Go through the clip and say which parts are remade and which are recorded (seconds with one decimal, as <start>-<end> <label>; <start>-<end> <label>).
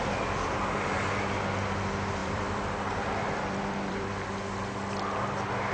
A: 0.0-2.2 recorded; 2.2-4.3 remade; 4.3-5.7 recorded